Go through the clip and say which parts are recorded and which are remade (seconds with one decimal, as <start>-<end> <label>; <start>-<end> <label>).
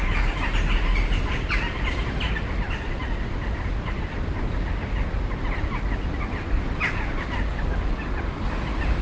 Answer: 0.0-9.0 recorded